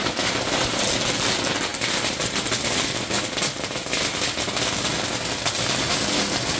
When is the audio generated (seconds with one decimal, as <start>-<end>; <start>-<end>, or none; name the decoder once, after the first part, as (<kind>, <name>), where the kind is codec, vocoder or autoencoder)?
none